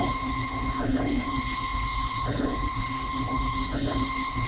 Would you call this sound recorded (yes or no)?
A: no